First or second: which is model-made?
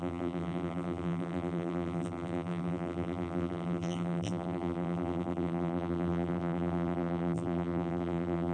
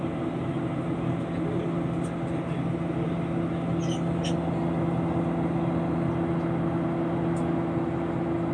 first